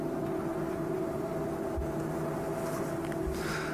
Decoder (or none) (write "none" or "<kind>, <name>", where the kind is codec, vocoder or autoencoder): none